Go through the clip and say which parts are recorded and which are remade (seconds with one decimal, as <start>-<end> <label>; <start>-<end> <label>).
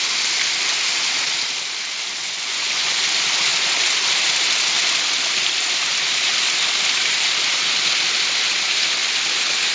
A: 0.0-2.2 recorded; 2.2-3.0 remade; 3.0-9.7 recorded